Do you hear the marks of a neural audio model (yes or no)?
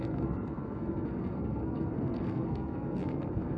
yes